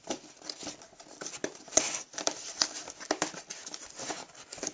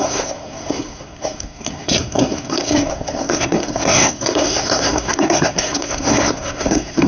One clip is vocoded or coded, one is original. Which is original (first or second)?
first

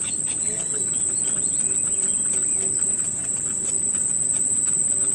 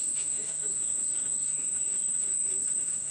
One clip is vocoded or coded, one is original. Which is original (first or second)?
first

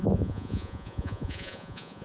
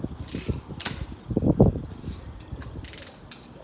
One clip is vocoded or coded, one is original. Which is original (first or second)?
second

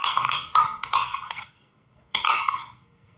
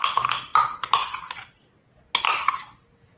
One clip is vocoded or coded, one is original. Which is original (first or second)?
second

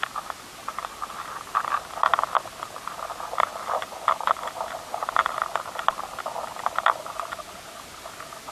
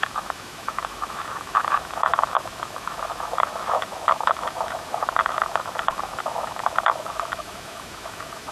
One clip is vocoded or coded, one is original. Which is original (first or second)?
first